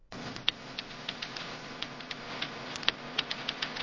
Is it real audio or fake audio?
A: fake